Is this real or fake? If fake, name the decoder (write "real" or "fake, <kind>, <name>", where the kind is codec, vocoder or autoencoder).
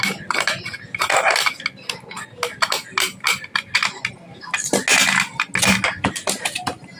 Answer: real